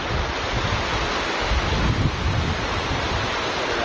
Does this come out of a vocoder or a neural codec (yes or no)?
no